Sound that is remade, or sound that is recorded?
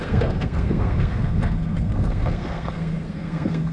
remade